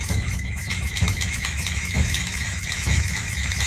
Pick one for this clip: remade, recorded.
remade